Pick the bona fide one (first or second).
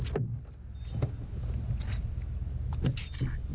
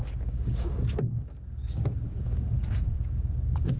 first